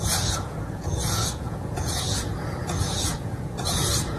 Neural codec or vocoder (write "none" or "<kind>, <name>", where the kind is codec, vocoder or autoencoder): vocoder, Vocos